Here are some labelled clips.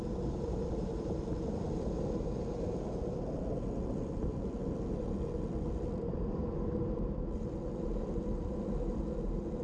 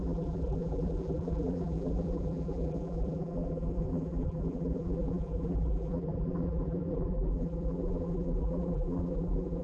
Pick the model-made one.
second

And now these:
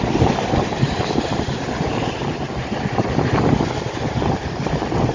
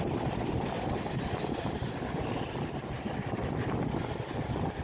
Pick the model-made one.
second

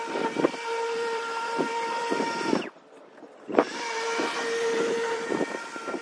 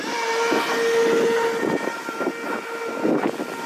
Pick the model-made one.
first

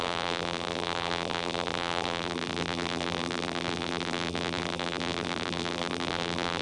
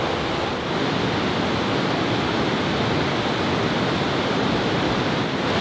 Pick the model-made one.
first